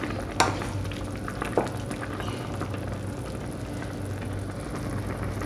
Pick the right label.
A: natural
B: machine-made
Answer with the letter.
A